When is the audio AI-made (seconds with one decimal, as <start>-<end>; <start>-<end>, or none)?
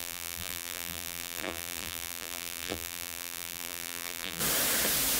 0.0-4.4